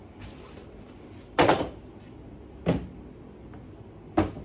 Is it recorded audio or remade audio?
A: recorded